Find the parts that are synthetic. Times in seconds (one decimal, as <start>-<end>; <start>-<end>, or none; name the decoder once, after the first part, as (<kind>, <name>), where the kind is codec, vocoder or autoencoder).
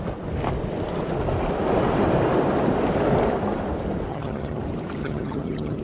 4.1-4.6 (vocoder, HiFi-GAN); 5.0-5.8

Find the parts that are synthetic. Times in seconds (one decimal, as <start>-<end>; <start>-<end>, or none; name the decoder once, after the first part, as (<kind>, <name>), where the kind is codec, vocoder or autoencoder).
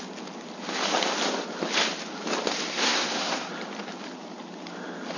2.7-3.5 (codec, SNAC)